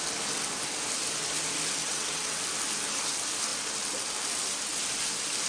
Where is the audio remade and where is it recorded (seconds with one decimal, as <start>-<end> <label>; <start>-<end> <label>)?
0.0-1.8 recorded; 1.8-2.4 remade; 2.4-5.5 recorded